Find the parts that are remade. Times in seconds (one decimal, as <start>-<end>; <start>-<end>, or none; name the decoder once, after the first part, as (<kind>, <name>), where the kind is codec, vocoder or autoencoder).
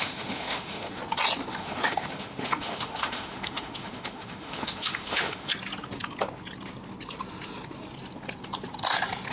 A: 0.0-1.0 (autoencoder, DAC-VAE); 1.5-5.5